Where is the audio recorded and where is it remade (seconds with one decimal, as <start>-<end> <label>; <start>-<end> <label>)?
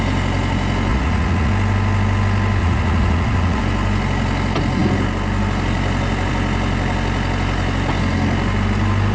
0.0-0.9 recorded; 0.9-1.5 remade; 1.5-2.6 recorded; 2.6-3.6 remade; 3.6-9.1 recorded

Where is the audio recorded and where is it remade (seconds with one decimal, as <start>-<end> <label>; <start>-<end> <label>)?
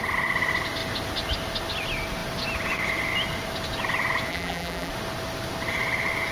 0.0-4.3 recorded; 4.3-4.9 remade; 4.9-6.3 recorded